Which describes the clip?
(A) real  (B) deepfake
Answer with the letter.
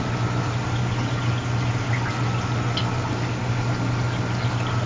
A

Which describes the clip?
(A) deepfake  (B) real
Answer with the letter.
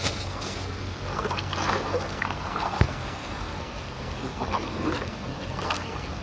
A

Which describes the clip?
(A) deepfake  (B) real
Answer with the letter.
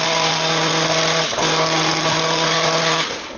B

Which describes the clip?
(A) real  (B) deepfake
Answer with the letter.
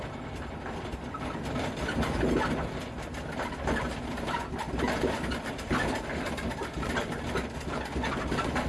A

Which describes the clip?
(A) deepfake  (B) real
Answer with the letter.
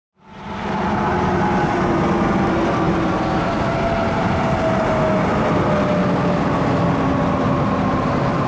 B